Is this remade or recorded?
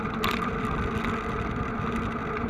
recorded